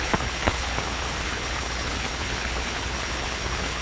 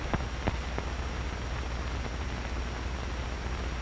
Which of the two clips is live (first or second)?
second